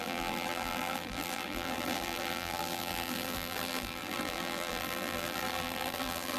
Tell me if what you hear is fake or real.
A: fake